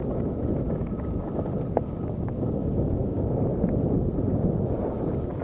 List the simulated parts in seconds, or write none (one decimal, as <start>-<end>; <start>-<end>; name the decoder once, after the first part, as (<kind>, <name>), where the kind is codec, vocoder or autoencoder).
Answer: 0.7-1.5 (codec, DAC); 2.0-3.5; 5.0-5.4